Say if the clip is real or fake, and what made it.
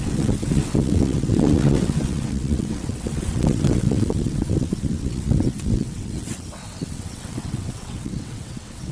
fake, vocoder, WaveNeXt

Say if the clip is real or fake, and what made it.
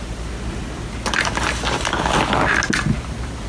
real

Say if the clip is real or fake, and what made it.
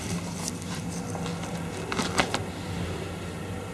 real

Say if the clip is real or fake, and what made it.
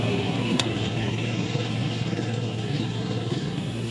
fake, codec, SNAC